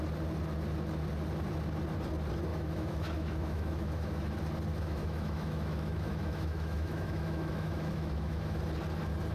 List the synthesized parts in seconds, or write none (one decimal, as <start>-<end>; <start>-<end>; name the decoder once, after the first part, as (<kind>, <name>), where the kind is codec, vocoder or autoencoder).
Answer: 2.5-4.2 (autoencoder, DAC-VAE); 4.7-8.6